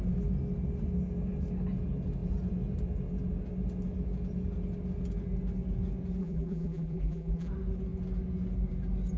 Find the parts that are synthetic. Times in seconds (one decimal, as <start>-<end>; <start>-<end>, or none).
6.2-7.5